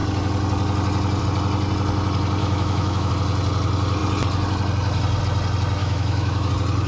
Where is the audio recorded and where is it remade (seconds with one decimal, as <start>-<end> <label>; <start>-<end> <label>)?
0.0-2.4 recorded; 2.4-3.1 remade; 3.1-5.8 recorded; 5.8-6.5 remade; 6.5-6.9 recorded